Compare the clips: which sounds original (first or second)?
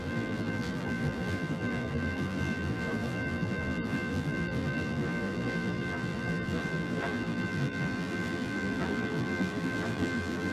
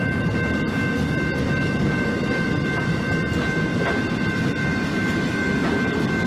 second